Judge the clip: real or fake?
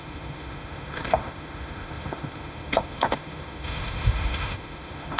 fake